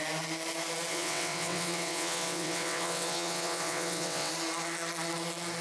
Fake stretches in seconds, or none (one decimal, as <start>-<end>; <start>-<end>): 0.9-4.3